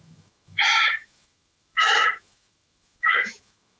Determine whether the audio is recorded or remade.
remade